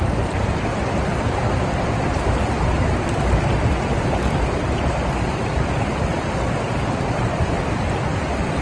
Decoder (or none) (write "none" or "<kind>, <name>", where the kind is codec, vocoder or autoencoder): none